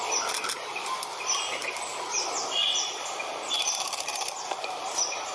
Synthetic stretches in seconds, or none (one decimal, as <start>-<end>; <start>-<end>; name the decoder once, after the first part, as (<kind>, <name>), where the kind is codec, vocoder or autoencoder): none